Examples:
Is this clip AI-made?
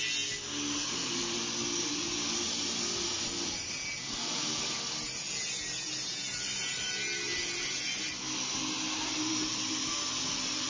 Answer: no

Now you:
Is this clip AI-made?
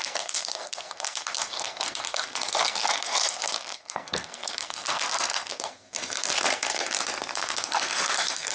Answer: yes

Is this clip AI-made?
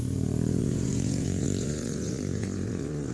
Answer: yes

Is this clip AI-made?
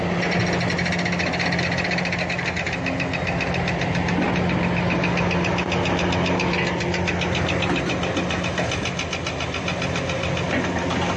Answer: no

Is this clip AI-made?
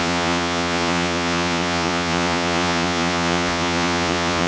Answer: yes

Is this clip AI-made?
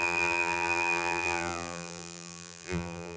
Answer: yes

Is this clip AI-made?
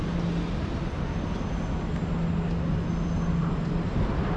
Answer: no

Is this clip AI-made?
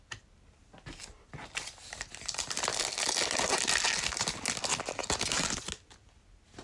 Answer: no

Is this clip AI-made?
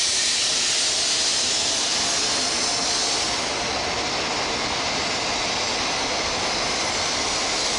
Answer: no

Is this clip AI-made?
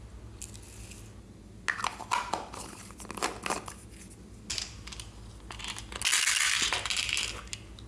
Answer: no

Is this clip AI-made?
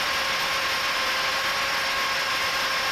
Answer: no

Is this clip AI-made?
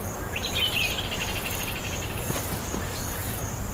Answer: yes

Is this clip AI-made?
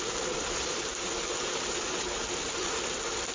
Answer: no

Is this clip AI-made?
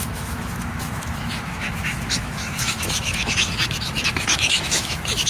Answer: yes